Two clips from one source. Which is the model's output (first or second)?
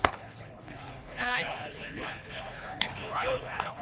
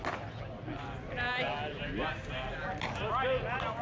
first